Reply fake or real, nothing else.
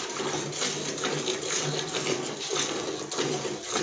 real